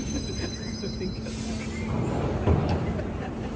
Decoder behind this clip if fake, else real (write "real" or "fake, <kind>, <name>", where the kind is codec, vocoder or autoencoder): real